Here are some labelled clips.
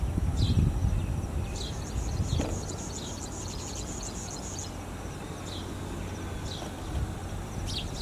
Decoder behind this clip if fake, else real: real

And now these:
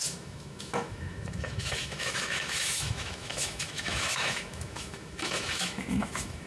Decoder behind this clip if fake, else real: fake, autoencoder, DAC-VAE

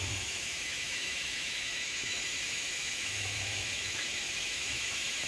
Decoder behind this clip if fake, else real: fake, autoencoder, DAC-VAE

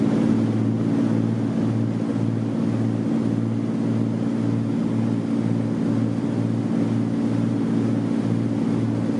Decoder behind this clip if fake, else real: real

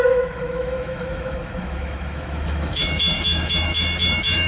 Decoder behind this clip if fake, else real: fake, autoencoder, DAC-VAE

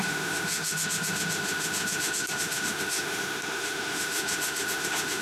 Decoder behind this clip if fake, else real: fake, autoencoder, DAC-VAE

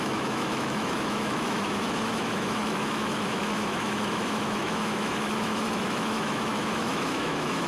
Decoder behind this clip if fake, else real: fake, autoencoder, DAC-VAE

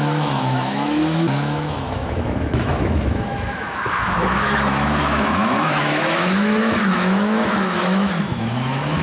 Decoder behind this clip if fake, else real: fake, autoencoder, DAC-VAE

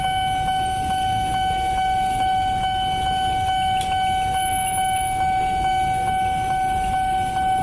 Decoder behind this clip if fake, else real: real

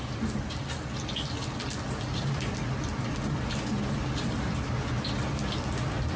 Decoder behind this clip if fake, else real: real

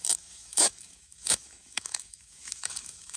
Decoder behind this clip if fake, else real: fake, autoencoder, DAC-VAE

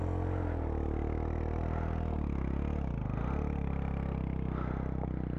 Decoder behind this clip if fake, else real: real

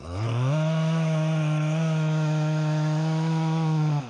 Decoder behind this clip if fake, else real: fake, autoencoder, DAC-VAE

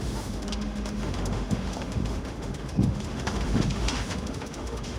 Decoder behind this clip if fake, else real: fake, autoencoder, DAC-VAE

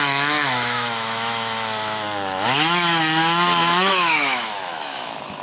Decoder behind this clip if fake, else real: fake, autoencoder, DAC-VAE